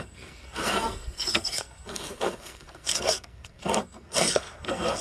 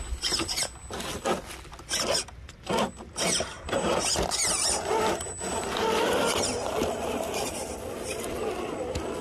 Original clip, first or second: second